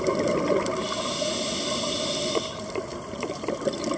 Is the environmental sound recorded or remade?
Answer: recorded